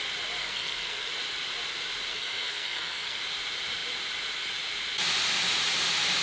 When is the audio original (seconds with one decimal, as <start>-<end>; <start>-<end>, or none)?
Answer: 0.0-0.4; 1.1-2.1; 3.2-6.2